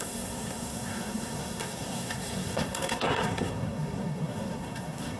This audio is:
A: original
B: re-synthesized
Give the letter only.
B